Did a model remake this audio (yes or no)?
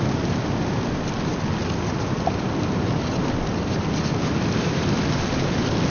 no